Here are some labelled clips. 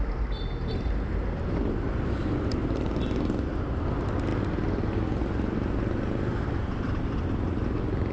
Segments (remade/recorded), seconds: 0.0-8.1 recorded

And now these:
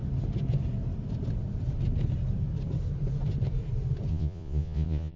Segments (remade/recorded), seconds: 0.0-4.1 recorded; 4.1-5.2 remade